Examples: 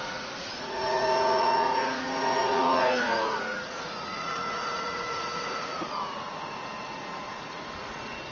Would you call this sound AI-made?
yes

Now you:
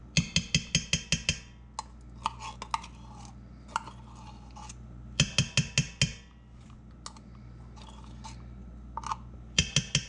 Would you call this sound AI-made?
no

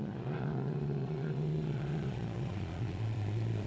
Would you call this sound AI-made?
yes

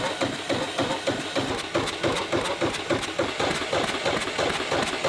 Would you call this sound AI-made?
no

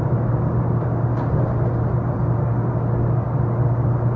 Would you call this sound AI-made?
no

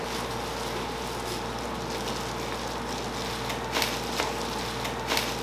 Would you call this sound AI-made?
no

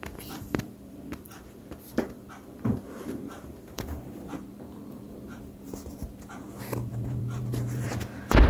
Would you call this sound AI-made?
yes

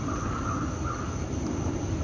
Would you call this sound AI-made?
no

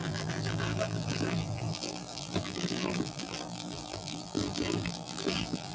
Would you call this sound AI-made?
yes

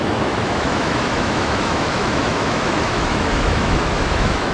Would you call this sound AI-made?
yes